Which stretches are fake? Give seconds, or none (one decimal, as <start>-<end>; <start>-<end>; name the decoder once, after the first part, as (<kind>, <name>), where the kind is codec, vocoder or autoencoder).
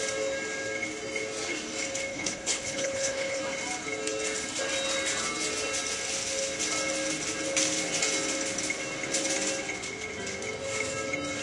2.1-3.4 (codec, HILCodec)